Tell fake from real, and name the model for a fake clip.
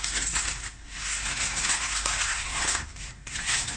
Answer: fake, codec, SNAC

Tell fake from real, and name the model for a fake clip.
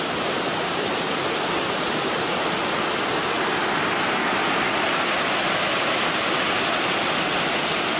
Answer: real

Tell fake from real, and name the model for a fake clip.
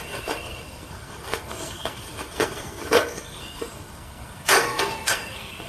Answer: fake, codec, SNAC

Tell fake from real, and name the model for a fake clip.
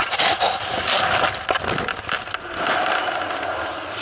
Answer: real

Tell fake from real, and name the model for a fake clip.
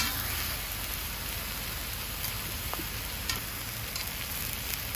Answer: real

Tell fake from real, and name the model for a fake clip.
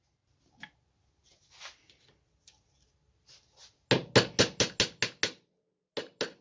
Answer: real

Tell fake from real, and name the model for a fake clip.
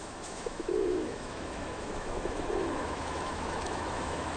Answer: fake, autoencoder, DAC-VAE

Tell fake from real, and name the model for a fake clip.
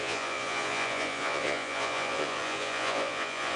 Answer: fake, vocoder, Vocos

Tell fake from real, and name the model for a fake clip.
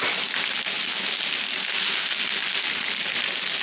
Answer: real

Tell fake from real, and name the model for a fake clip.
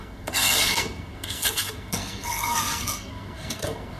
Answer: fake, codec, SNAC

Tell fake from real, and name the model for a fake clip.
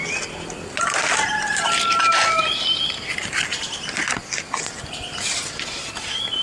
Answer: real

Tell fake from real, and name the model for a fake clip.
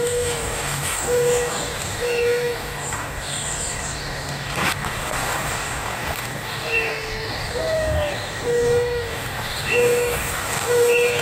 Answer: fake, codec, DAC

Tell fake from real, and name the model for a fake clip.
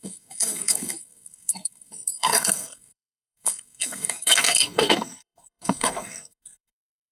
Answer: fake, codec, SNAC